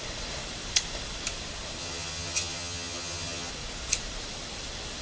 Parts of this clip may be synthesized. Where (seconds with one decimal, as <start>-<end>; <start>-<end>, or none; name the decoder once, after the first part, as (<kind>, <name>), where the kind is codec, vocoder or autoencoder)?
1.8-3.5 (vocoder, HiFi-GAN)